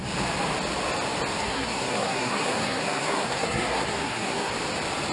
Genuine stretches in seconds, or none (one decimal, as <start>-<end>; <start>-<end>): 0.0-1.4; 4.5-5.1